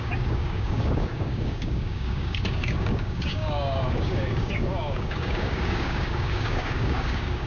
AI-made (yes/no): yes